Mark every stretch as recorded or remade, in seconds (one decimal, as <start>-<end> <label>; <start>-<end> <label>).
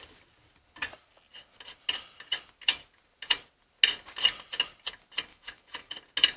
0.0-5.3 recorded; 5.3-5.9 remade; 5.9-6.4 recorded